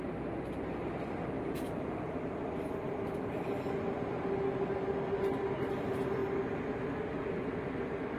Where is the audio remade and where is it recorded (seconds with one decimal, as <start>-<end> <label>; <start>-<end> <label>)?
0.0-8.2 recorded